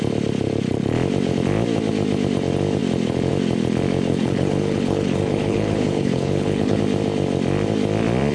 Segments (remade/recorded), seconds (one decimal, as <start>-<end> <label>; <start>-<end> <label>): 0.0-4.1 recorded; 4.1-6.8 remade; 6.8-8.3 recorded